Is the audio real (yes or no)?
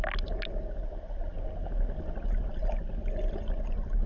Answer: yes